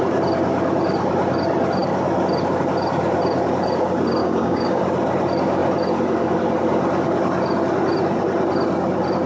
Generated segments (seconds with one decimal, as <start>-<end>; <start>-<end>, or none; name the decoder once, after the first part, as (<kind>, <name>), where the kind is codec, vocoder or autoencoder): 4.2-4.8 (codec, DAC)